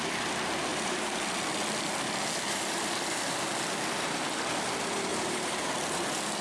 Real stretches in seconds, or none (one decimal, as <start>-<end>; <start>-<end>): 0.0-0.7; 1.2-5.1; 5.7-6.4